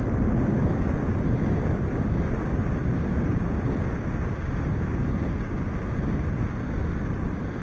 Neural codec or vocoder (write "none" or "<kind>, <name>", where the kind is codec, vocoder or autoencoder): none